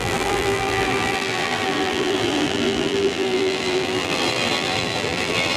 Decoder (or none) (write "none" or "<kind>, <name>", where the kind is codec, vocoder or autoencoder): vocoder, BigVGAN v2